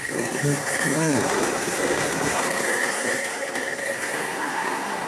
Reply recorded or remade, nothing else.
remade